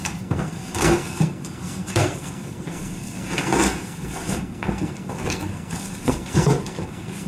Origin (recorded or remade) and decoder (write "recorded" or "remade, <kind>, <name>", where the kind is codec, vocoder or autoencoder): remade, codec, SNAC